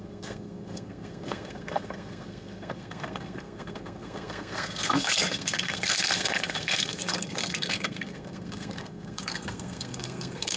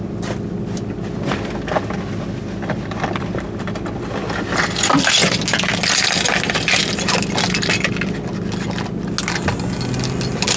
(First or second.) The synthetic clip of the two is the first